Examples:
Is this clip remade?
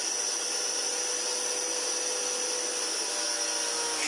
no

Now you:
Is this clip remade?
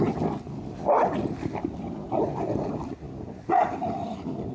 yes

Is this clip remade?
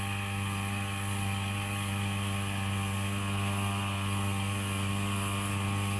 no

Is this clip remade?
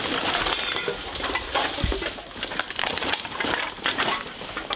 yes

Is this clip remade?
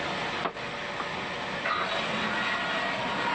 no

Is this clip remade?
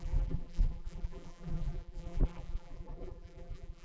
yes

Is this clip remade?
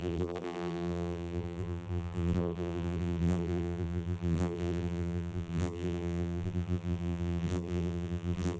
yes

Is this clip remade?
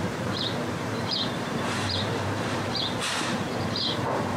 yes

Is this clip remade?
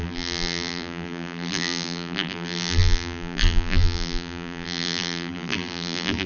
yes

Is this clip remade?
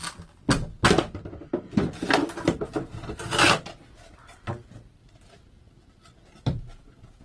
no